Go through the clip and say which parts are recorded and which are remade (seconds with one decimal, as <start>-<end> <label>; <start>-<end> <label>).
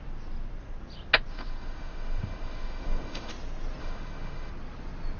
0.0-1.3 recorded; 1.3-3.3 remade; 3.3-3.8 recorded; 3.8-4.5 remade; 4.5-5.2 recorded